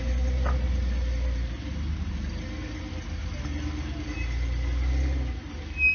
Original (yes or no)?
yes